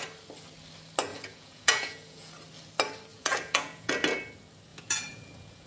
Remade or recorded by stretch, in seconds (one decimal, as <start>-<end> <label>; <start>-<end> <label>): 0.0-1.1 recorded; 1.1-2.3 remade; 2.3-3.1 recorded; 3.1-3.9 remade; 3.9-4.7 recorded; 4.7-5.7 remade

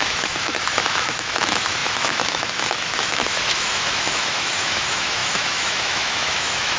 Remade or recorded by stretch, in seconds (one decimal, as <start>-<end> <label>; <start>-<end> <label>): 0.0-6.8 remade

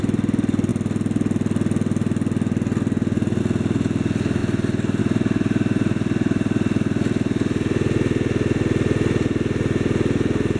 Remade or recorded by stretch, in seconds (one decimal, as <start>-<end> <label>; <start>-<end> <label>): 0.0-10.6 recorded

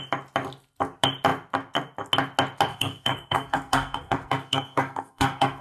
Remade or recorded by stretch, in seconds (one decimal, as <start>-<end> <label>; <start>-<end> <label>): 0.0-2.7 recorded; 2.7-5.6 remade